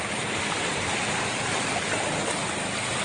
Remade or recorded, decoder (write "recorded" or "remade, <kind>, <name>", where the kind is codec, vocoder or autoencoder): recorded